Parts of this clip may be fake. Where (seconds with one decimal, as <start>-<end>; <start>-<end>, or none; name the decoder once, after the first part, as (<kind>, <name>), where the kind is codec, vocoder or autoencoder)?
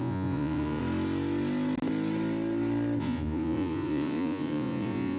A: 0.0-0.8 (vocoder, Vocos); 3.0-5.2